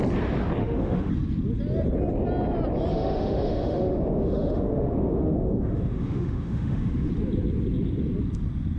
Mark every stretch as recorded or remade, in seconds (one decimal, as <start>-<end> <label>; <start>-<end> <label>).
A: 0.0-0.6 recorded; 0.6-1.1 remade; 1.1-2.9 recorded; 2.9-7.1 remade; 7.1-8.8 recorded